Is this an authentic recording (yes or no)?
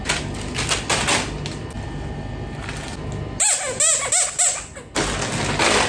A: yes